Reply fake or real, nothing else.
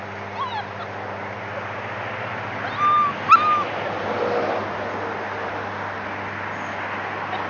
real